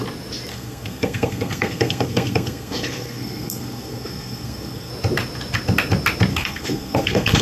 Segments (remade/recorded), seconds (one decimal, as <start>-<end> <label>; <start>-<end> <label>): 0.0-0.5 recorded; 0.5-4.9 remade; 4.9-6.3 recorded; 6.3-7.4 remade